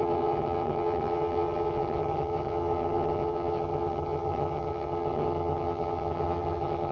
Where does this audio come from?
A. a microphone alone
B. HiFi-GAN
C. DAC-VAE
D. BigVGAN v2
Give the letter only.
B